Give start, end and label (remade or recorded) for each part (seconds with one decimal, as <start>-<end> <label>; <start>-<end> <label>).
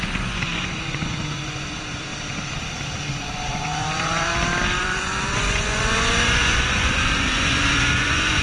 0.0-2.1 remade; 2.1-3.1 recorded; 3.1-4.3 remade; 4.3-4.8 recorded; 4.8-8.4 remade